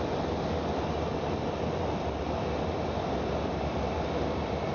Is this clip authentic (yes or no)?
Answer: yes